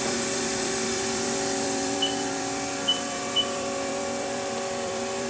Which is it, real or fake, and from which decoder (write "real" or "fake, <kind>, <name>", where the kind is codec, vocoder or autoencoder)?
fake, vocoder, BigVGAN v2